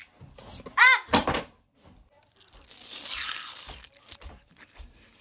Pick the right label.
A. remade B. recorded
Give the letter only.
B